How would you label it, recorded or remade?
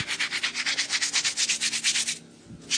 recorded